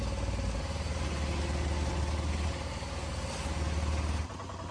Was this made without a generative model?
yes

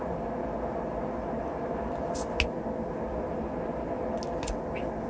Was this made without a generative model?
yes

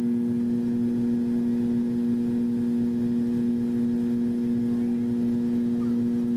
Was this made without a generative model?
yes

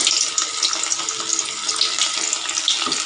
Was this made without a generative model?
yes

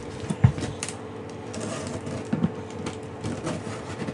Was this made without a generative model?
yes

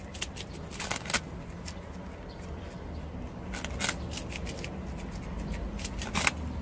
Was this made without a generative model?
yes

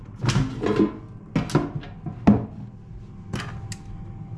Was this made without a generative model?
yes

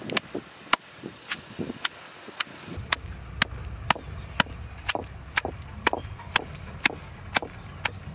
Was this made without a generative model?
yes